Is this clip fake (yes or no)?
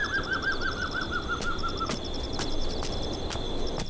no